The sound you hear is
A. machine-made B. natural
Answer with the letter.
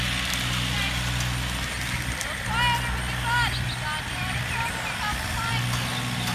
B